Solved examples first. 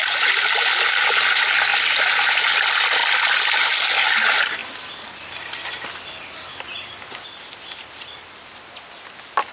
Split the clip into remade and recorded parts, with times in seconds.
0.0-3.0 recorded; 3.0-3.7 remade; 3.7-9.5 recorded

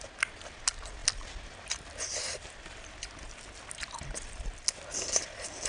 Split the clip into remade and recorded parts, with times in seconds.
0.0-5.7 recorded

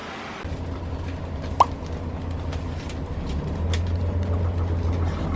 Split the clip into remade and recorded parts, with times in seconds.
0.0-5.4 recorded

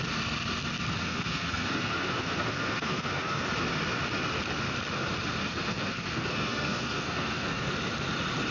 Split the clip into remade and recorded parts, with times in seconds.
0.0-1.1 recorded; 1.1-3.4 remade; 3.4-5.4 recorded; 5.4-7.7 remade; 7.7-8.5 recorded

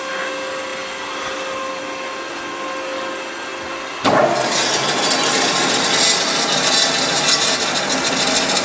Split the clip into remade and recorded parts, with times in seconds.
0.0-8.6 recorded